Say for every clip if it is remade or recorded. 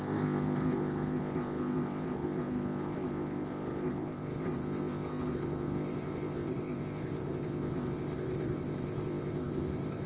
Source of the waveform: remade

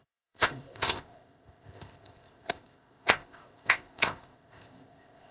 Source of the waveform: remade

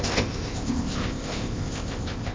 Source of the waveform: remade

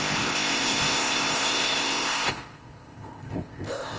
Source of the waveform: remade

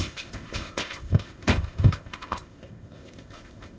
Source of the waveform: remade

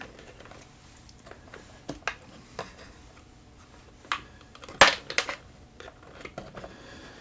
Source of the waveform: recorded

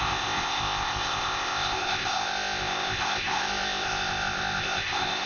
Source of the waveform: remade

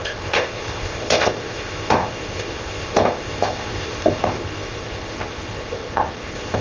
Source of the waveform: remade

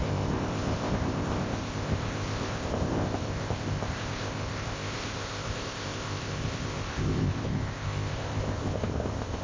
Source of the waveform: remade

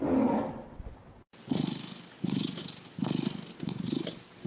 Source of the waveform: recorded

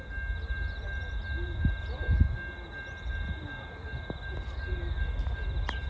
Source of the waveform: recorded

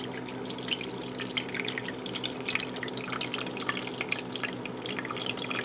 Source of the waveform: recorded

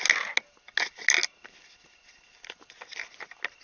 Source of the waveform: recorded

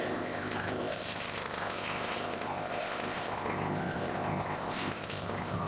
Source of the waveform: remade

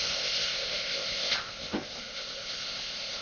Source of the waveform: remade